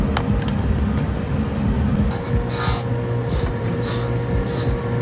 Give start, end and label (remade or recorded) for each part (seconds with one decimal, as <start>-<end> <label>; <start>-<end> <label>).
0.0-3.2 recorded; 3.2-3.9 remade; 3.9-5.0 recorded